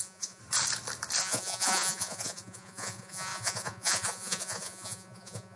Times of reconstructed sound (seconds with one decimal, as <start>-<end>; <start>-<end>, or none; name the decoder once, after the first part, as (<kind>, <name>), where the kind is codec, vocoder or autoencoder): 0.0-0.4 (vocoder, Vocos); 1.2-5.6

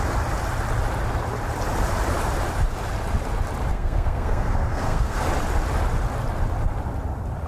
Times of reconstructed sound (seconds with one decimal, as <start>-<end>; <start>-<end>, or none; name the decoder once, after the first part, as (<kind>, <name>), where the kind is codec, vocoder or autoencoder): 3.7-5.2 (codec, SNAC)

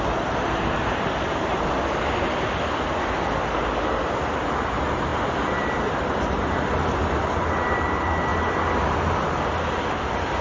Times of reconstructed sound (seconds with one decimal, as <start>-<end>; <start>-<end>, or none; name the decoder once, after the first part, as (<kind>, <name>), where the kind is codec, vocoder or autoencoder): none

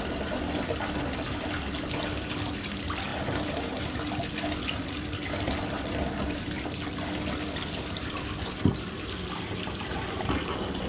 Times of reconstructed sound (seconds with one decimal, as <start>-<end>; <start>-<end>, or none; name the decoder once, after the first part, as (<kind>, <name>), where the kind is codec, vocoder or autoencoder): none

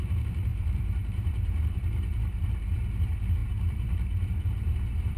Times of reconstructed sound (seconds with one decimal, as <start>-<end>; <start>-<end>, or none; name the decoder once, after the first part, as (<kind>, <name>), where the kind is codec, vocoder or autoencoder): 0.5-2.9 (vocoder, BigVGAN v2); 3.4-5.2

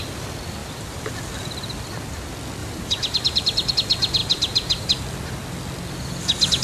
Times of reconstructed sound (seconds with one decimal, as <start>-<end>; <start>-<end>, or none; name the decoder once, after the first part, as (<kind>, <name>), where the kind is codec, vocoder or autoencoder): 0.6-1.1 (vocoder, BigVGAN v2); 2.6-3.7; 4.2-5.0

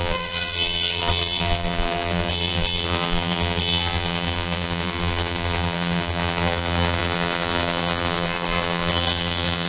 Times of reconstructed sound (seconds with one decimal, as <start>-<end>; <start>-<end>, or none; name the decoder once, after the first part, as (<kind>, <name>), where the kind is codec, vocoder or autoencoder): 0.0-9.7 (vocoder, BigVGAN v2)